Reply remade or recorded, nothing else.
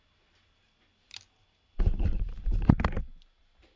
recorded